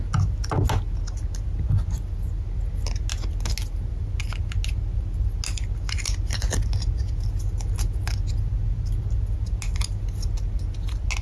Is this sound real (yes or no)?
yes